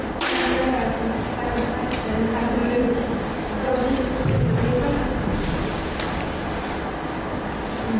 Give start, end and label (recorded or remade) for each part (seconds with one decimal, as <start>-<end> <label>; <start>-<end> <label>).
0.0-8.0 recorded